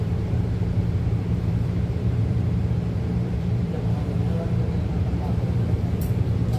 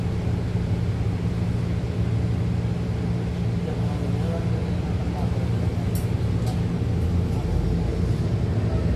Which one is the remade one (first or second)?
first